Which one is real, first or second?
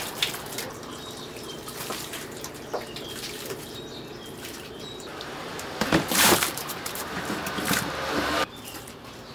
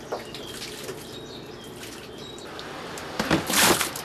second